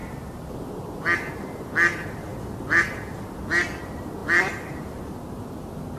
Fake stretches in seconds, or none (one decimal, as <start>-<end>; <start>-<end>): none